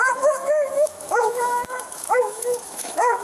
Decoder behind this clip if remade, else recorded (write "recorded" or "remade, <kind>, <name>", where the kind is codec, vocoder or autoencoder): remade, autoencoder, DAC-VAE